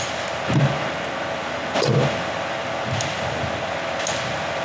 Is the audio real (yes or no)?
yes